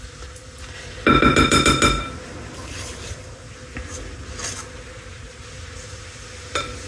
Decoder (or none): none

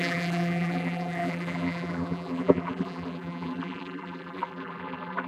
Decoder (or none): vocoder, BigVGAN v2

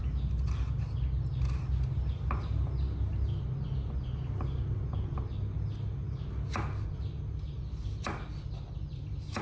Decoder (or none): none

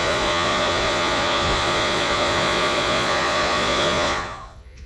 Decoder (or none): vocoder, Vocos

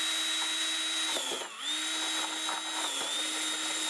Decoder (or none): none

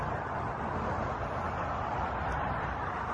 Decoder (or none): none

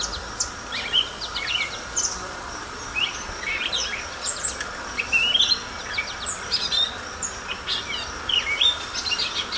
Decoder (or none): none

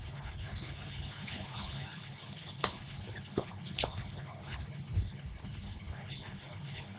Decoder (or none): codec, HILCodec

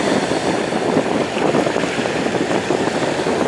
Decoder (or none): none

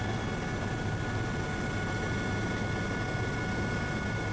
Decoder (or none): none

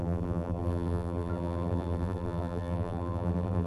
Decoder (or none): vocoder, BigVGAN v2